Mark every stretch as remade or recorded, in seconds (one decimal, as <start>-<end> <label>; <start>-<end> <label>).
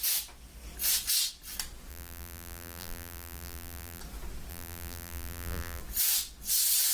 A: 0.0-1.9 recorded; 1.9-4.0 remade; 4.0-4.5 recorded; 4.5-5.8 remade; 5.8-6.9 recorded